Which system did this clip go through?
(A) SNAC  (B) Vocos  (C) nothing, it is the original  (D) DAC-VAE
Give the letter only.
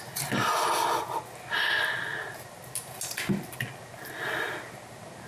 C